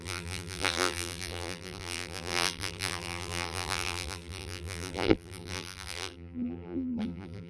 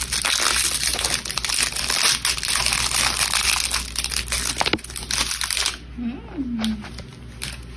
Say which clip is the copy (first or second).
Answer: first